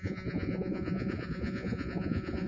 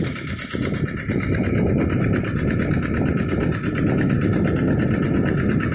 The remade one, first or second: first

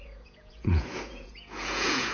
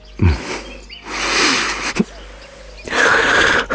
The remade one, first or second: first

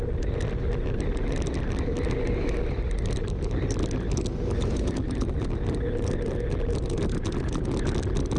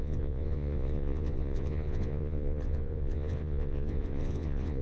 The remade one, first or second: second